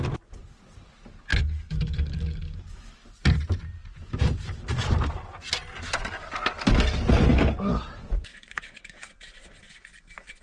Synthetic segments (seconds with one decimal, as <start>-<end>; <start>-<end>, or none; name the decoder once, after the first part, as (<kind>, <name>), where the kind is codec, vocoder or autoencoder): 1.3-3.0 (codec, DAC); 7.3-7.8; 8.2-9.1